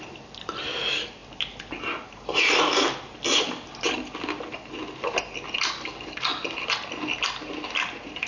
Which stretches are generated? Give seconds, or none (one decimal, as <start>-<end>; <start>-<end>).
none